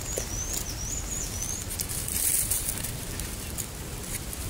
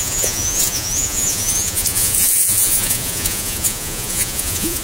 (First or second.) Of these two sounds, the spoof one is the second